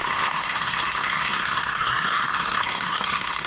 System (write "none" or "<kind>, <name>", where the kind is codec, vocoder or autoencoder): codec, SNAC